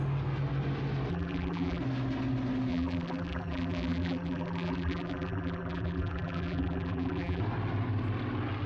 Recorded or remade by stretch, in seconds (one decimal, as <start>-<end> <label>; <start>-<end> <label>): 0.0-1.1 recorded; 1.1-1.8 remade; 1.8-2.7 recorded; 2.7-7.4 remade; 7.4-8.7 recorded